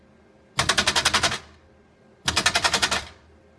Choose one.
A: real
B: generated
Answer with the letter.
A